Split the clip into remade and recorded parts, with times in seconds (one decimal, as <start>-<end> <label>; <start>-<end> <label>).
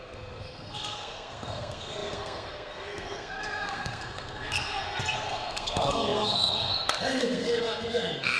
0.0-8.4 remade